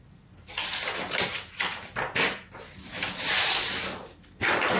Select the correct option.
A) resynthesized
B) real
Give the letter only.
B